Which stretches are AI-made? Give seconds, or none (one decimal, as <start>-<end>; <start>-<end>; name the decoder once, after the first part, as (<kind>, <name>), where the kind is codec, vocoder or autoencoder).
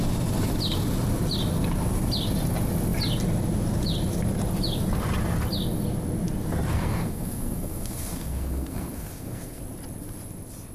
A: 6.7-9.6 (codec, SNAC)